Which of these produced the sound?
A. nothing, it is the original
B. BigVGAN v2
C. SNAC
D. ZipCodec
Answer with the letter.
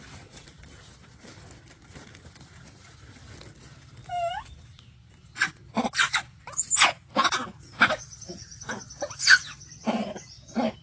A